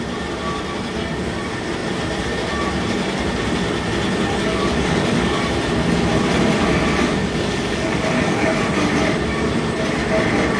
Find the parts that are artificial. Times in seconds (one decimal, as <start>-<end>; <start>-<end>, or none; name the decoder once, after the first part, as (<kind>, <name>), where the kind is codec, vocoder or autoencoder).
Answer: 4.4-5.4 (codec, DAC); 7.2-8.7